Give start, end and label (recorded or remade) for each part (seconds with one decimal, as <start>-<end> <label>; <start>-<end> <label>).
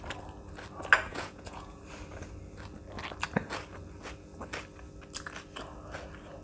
0.0-1.1 recorded; 1.1-1.8 remade; 1.8-6.4 recorded